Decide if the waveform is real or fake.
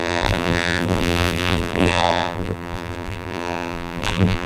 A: fake